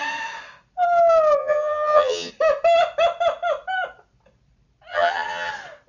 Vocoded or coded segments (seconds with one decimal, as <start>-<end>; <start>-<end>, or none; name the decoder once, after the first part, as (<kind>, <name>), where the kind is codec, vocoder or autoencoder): 1.4-2.3 (vocoder, HiFi-GAN); 4.9-5.5